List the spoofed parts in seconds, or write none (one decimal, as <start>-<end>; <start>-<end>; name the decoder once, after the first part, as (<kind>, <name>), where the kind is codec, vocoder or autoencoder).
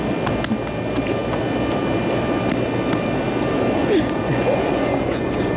3.8-5.6 (vocoder, Vocos)